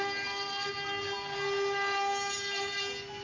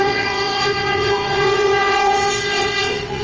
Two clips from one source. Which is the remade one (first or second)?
second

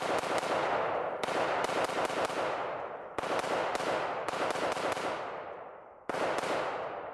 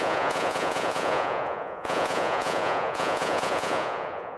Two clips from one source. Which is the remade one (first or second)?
second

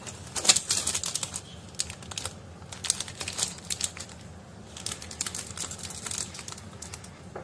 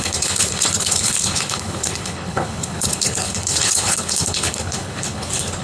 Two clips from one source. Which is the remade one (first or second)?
second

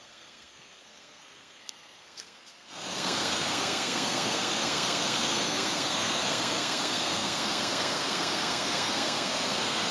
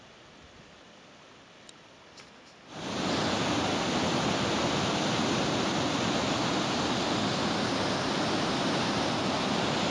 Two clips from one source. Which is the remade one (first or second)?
first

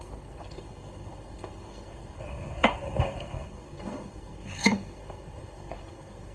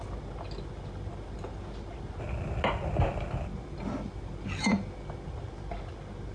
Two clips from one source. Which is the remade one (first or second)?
first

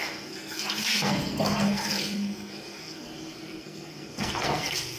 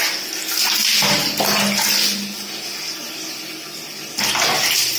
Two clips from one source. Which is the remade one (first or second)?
first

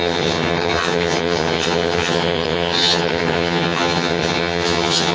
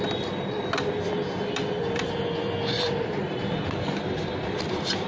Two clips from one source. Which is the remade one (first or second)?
first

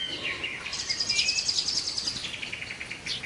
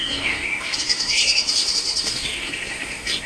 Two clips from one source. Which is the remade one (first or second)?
second